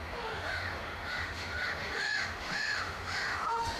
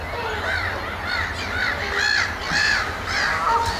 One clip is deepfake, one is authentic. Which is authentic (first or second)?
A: second